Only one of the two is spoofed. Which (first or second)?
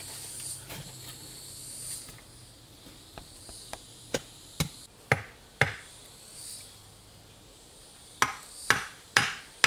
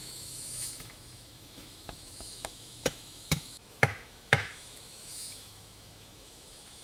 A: second